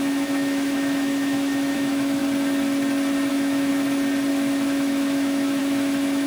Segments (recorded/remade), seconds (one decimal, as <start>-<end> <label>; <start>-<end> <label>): 0.0-2.2 remade; 2.2-3.3 recorded; 3.3-3.7 remade; 3.7-4.3 recorded; 4.3-6.3 remade